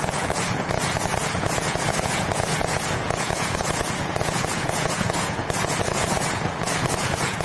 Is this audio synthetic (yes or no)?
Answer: yes